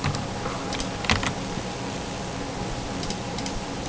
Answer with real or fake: fake